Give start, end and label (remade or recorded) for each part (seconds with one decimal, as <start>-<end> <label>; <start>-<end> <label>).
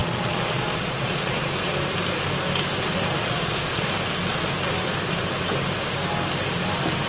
0.0-1.5 remade; 1.5-3.2 recorded; 3.2-3.9 remade; 3.9-7.1 recorded